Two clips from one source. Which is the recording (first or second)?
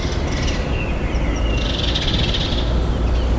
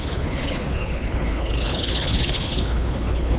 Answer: first